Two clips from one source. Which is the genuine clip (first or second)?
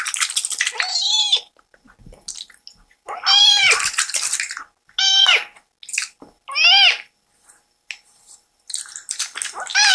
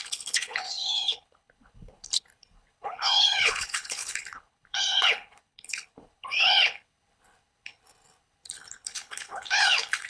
first